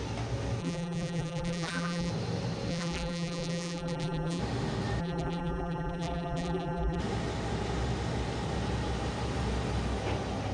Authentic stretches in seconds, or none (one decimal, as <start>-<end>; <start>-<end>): 0.0-0.6; 2.1-2.7; 4.4-5.0; 7.0-10.5

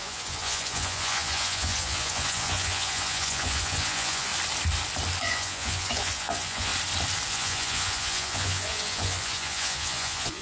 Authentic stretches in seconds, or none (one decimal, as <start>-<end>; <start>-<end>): 4.3-5.2; 6.7-7.3

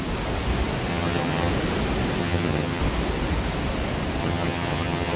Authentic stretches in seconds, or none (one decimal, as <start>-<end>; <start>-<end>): 0.0-0.9; 1.5-2.2; 2.8-4.2

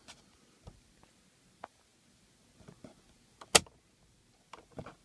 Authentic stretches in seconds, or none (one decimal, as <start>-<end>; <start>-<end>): 0.0-5.0

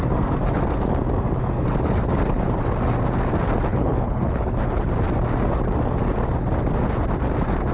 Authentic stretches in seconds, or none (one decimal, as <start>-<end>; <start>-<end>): 0.0-3.7; 4.9-7.7

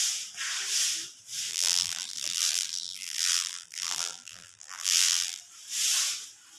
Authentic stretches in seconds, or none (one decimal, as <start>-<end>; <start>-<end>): 0.0-1.5; 5.4-6.6

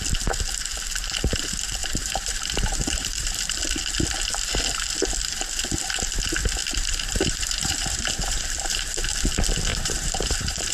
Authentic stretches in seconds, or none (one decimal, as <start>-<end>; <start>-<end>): 0.0-1.8; 3.6-6.6; 9.1-9.7